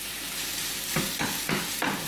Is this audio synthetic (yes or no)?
no